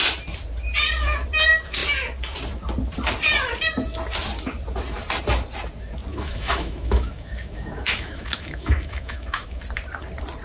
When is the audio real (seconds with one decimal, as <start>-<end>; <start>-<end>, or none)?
0.0-6.1; 9.6-10.4